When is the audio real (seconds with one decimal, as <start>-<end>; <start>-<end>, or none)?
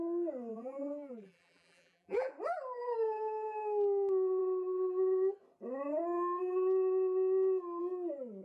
0.0-0.5; 2.3-8.4